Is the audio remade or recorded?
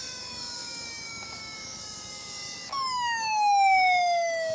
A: remade